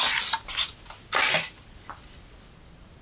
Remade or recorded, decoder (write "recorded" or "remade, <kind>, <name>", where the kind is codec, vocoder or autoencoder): recorded